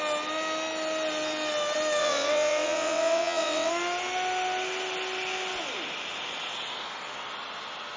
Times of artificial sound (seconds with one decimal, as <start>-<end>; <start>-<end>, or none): 2.0-3.7